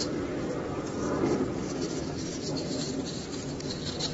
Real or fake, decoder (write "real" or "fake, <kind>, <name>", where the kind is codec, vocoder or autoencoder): real